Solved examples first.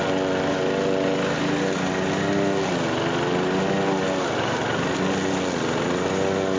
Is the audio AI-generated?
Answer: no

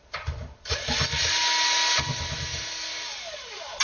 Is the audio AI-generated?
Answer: no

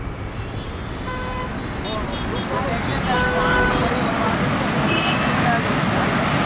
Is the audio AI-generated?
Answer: no